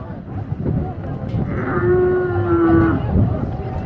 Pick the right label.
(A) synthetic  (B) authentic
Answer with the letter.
B